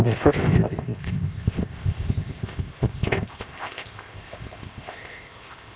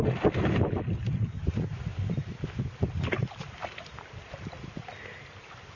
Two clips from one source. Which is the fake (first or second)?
first